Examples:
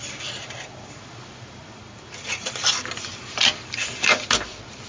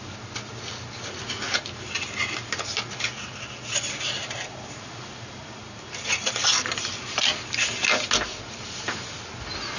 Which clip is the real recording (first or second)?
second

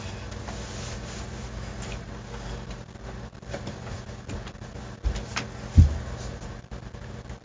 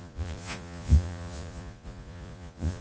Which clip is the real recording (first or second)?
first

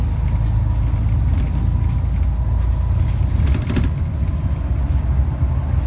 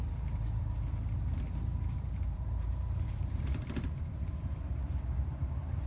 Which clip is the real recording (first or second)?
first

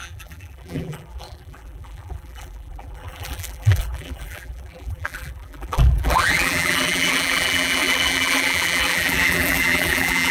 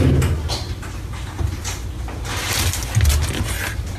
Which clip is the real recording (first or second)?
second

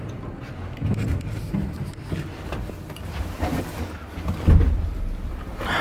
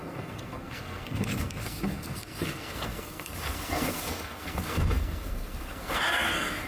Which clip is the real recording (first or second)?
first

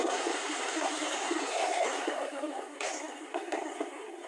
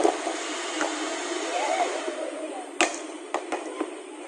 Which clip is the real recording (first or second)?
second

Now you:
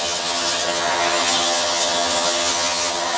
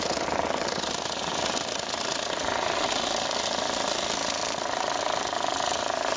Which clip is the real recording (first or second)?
second